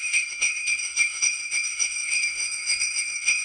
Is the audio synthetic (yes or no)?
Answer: yes